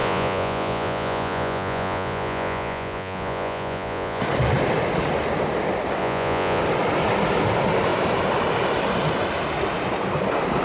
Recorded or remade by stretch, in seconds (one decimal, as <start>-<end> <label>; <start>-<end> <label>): 0.0-4.2 remade; 4.2-6.0 recorded; 6.0-6.6 remade; 6.6-10.6 recorded